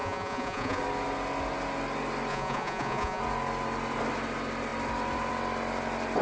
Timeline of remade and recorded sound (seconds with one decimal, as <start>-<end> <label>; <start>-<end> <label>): 0.0-0.8 remade; 0.8-2.3 recorded; 2.3-3.2 remade; 3.2-6.2 recorded